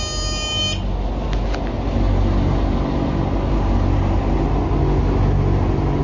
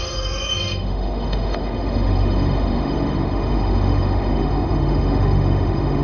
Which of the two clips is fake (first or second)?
second